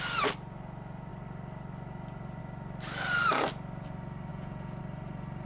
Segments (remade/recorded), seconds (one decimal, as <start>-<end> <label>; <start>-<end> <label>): 0.0-4.3 recorded; 4.3-4.8 remade; 4.8-5.5 recorded